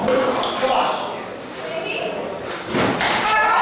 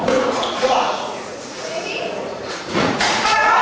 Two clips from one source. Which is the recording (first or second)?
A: first